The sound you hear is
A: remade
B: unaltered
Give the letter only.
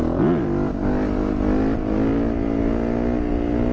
B